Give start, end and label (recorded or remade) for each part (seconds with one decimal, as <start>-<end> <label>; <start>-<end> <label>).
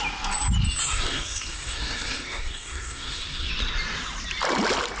0.0-0.8 recorded; 0.8-3.5 remade; 3.5-5.0 recorded